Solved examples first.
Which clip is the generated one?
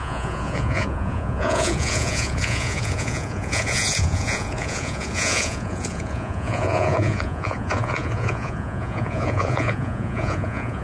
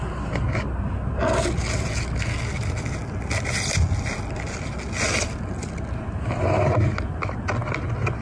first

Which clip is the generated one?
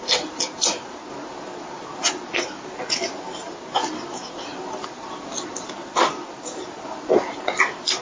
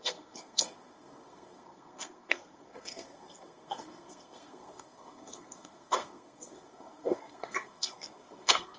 second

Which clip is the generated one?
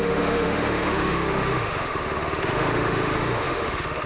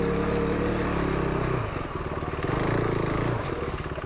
first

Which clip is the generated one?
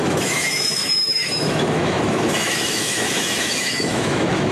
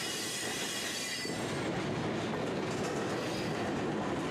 first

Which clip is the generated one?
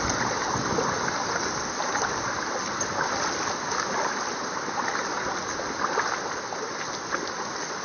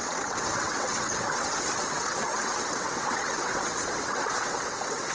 second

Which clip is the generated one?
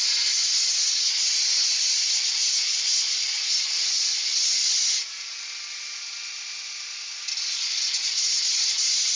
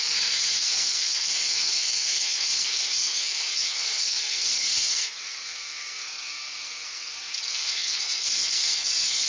second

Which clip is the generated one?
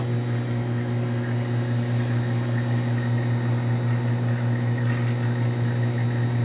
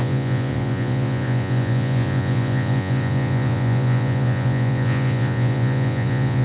second